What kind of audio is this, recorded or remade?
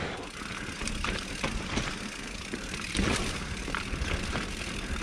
recorded